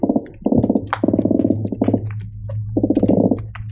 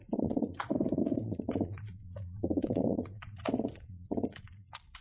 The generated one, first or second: second